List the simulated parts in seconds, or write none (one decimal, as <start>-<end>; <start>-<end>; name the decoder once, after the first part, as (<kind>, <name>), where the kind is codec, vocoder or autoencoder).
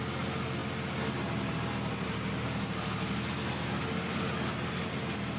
none